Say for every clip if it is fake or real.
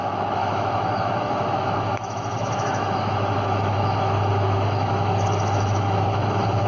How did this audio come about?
fake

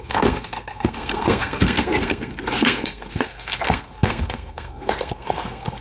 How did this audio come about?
fake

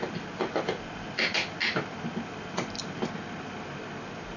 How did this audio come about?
real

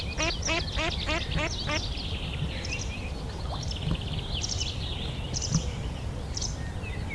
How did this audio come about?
real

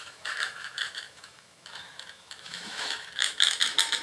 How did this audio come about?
fake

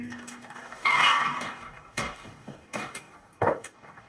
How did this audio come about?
fake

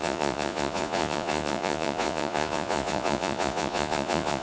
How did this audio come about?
fake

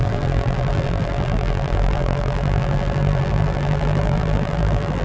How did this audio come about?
fake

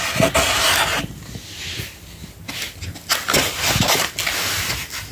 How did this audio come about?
real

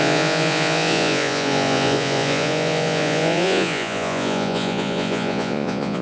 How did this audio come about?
fake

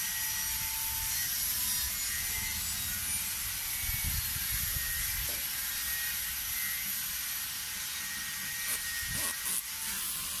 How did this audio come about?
real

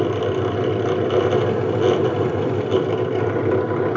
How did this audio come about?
real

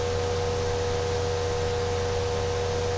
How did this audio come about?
real